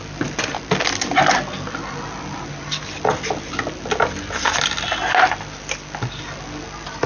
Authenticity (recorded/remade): recorded